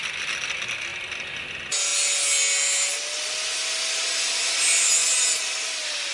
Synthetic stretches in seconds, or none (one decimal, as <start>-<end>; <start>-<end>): none